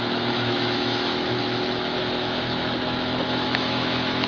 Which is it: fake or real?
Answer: fake